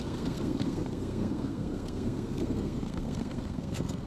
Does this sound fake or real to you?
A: fake